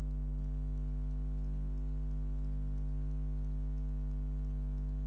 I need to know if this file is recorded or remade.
recorded